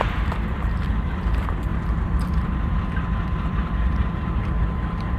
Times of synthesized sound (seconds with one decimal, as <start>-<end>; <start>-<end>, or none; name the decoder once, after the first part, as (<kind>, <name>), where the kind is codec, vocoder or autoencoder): 0.0-5.2 (vocoder, BigVGAN v2)